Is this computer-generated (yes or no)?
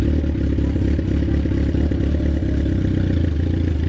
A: no